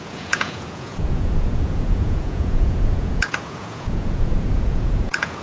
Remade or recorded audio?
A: remade